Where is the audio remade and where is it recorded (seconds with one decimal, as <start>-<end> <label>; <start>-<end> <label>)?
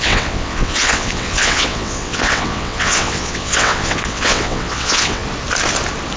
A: 0.0-5.2 remade; 5.2-6.2 recorded